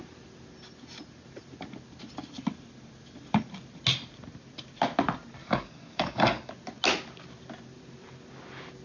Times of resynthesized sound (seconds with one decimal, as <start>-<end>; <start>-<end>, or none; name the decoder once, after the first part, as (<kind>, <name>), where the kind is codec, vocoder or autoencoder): 5.4-6.5 (codec, DAC)